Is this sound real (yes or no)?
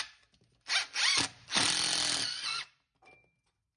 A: yes